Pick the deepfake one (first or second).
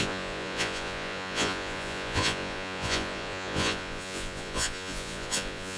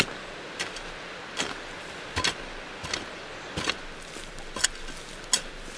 first